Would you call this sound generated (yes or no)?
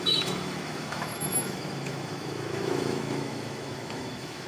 yes